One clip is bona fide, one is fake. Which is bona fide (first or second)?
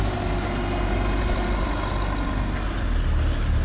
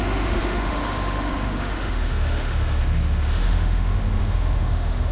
first